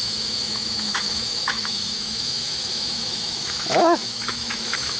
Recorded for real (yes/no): no